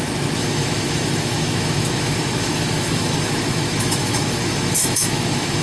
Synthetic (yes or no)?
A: yes